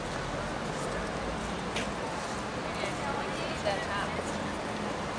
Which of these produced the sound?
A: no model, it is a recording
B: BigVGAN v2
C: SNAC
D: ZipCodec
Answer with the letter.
A